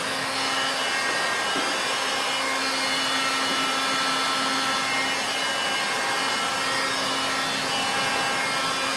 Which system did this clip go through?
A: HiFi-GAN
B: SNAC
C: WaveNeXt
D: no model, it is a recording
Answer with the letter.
D